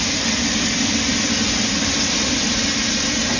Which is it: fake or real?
real